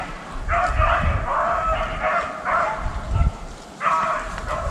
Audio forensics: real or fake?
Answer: real